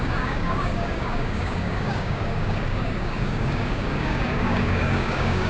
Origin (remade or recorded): remade